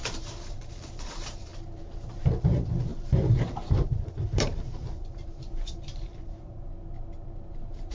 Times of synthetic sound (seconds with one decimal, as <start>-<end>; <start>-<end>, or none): 0.0-1.5; 2.2-6.7; 7.5-7.9